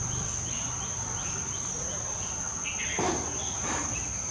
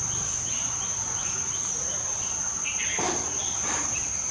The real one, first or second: first